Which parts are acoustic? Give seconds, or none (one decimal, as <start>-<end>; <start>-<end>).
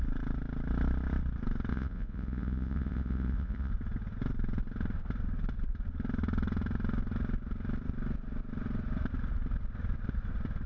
0.0-1.7; 3.7-10.7